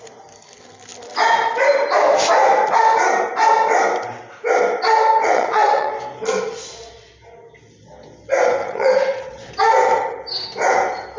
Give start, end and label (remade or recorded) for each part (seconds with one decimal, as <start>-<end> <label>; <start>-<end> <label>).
0.0-5.2 recorded; 5.2-5.9 remade; 5.9-8.6 recorded; 8.6-9.5 remade; 9.5-11.2 recorded